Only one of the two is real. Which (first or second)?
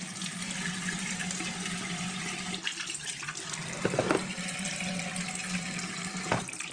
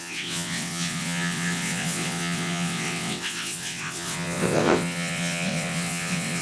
first